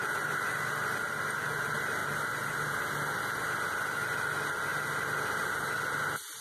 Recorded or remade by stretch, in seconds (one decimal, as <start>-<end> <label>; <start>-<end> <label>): 0.0-2.0 recorded; 2.0-2.7 remade; 2.7-6.4 recorded